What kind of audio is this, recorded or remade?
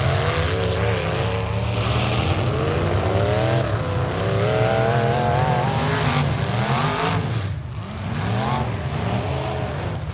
recorded